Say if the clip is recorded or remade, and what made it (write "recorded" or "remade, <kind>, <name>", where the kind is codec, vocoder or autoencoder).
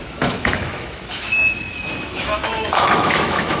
remade, autoencoder, DAC-VAE